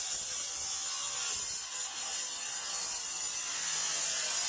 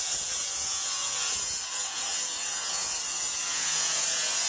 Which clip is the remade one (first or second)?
second